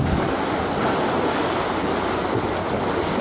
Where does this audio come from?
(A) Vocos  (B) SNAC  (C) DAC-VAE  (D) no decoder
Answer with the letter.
D